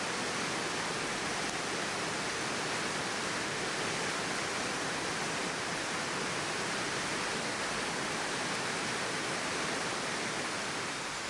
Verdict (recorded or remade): recorded